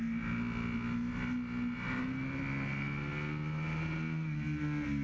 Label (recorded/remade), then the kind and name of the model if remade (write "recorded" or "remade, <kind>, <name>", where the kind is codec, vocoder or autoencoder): recorded